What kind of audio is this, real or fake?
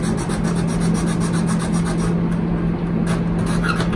real